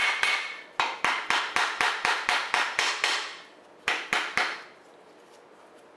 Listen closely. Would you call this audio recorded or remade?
recorded